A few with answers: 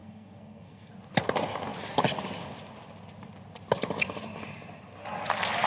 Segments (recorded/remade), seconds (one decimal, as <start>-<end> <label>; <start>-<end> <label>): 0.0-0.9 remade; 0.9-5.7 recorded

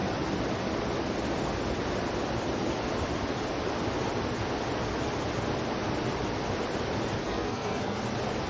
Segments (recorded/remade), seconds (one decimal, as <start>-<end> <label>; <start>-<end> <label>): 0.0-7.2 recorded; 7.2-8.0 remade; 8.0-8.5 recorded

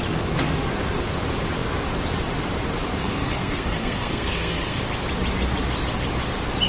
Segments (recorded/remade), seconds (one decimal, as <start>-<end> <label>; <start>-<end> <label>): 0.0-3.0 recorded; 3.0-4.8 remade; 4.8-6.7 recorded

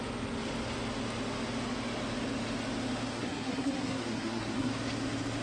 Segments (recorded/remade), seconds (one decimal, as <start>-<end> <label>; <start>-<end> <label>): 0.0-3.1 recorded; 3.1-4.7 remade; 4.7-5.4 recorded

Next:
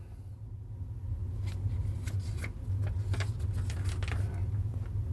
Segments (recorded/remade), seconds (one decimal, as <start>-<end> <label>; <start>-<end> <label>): 0.0-5.1 recorded

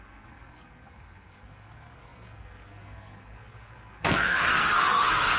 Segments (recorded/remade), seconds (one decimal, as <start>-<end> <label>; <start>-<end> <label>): 0.0-5.4 remade

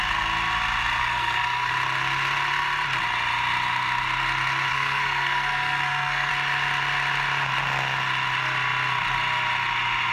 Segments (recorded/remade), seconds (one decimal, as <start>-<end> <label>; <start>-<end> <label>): 0.0-1.0 recorded; 1.0-1.7 remade; 1.7-4.7 recorded; 4.7-6.3 remade; 6.3-10.1 recorded